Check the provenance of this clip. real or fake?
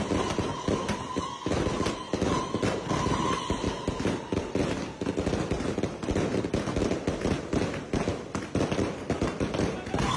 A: real